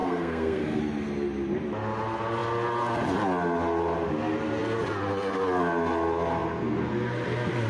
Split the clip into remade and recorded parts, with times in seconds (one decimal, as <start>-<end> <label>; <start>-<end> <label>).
0.0-0.8 remade; 0.8-7.7 recorded